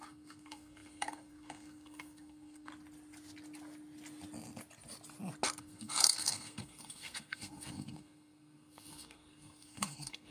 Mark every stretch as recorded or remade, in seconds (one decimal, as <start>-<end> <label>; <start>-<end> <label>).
0.0-2.7 remade; 2.7-5.6 recorded; 5.6-10.3 remade